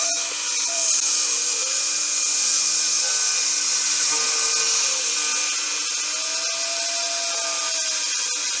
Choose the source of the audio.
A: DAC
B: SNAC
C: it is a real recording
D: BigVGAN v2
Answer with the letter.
C